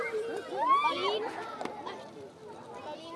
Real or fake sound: real